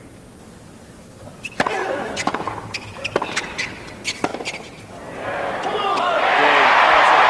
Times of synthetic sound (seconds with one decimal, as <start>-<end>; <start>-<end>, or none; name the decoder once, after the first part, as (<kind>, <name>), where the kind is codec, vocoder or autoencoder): 1.8-2.5 (vocoder, Vocos)